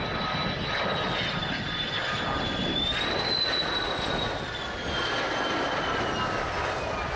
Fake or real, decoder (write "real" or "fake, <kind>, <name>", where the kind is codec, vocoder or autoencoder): real